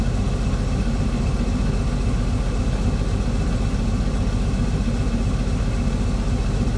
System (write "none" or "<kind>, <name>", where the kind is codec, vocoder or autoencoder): none